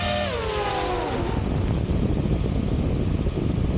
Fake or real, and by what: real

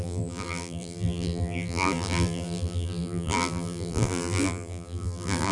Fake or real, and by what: fake, vocoder, BigVGAN v2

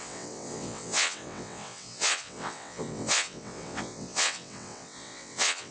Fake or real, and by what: fake, vocoder, WaveNeXt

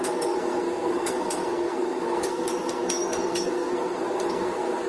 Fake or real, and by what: fake, codec, SNAC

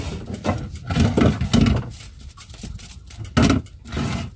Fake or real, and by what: real